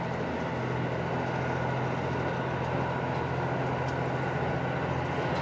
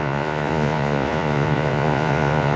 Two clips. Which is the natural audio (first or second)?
first